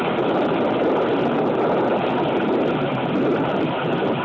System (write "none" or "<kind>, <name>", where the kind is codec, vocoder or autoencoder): none